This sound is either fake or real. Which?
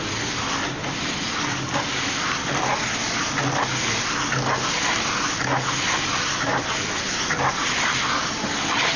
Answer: real